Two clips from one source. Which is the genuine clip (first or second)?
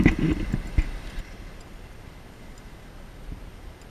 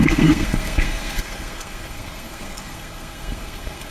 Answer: first